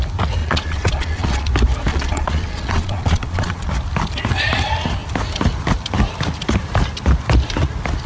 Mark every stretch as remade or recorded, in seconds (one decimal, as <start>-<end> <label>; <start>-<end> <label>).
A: 0.0-0.4 recorded; 0.4-1.5 remade; 1.5-1.9 recorded; 1.9-3.7 remade; 3.7-8.1 recorded